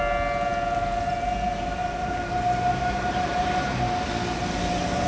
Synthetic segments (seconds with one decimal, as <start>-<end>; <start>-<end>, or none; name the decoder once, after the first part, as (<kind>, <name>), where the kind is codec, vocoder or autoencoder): 1.8-3.8 (vocoder, BigVGAN v2)